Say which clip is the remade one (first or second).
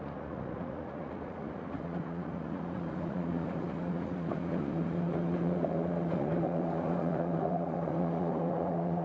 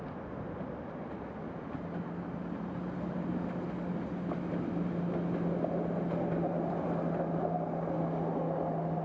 first